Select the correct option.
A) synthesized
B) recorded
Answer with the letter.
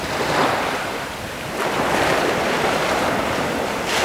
A